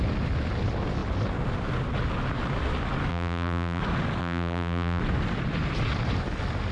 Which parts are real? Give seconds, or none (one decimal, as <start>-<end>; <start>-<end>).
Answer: 0.0-3.1; 3.8-4.2; 5.0-6.7